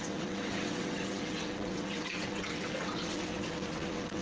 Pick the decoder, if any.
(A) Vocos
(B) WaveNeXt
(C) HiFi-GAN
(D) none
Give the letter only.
B